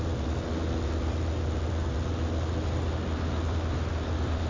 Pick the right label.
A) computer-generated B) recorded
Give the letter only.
B